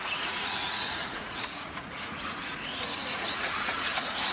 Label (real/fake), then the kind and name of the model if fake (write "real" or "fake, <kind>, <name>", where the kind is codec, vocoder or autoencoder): fake, vocoder, Vocos